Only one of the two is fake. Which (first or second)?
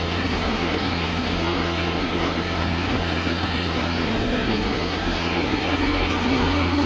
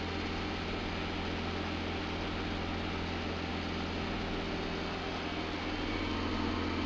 first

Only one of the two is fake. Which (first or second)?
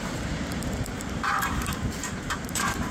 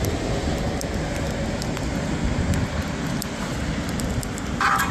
first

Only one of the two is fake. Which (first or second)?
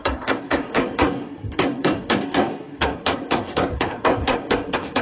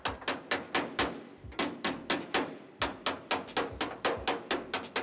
first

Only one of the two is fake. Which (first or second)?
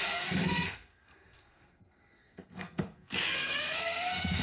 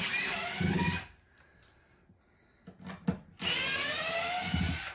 first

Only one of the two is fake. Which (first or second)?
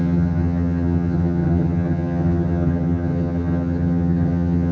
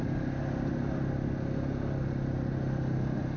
first